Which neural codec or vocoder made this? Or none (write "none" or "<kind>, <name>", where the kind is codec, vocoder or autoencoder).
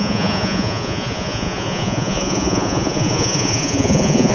vocoder, Vocos